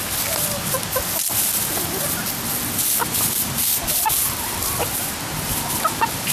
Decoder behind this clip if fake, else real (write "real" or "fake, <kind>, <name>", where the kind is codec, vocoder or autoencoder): real